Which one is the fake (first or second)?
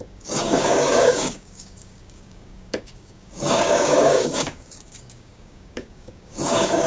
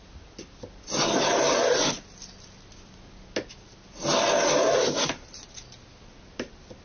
first